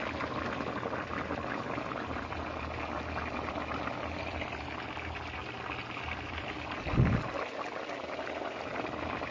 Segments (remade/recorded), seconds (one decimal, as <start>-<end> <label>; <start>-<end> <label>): 0.0-9.3 recorded